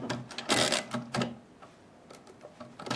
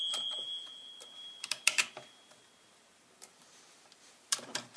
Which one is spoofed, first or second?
second